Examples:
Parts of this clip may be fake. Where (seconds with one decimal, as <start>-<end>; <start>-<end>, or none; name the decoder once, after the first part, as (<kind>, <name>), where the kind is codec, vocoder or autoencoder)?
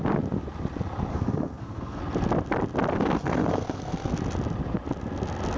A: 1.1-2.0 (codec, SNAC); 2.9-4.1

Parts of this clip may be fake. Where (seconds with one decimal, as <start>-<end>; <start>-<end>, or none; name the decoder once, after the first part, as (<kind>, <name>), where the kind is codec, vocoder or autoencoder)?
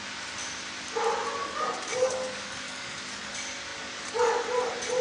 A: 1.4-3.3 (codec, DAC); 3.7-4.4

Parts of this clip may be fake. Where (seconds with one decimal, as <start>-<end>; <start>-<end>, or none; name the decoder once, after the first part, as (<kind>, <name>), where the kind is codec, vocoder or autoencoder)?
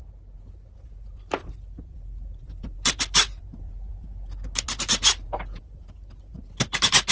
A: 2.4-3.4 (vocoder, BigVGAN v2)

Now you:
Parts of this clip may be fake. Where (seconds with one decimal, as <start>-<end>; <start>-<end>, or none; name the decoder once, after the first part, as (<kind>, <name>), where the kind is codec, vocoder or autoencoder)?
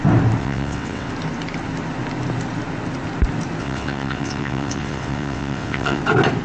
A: 0.4-1.1 (vocoder, WaveNeXt); 3.6-6.0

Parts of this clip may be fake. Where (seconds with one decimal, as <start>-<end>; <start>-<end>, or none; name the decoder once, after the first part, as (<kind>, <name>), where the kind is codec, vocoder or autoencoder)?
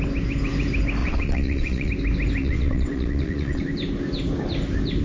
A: 1.0-1.9 (vocoder, WaveNeXt); 2.4-3.6